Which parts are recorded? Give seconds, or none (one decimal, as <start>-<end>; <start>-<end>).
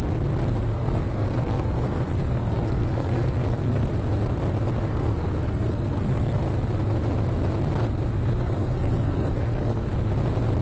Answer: 0.0-0.7; 3.9-4.9; 6.4-8.4; 9.9-10.6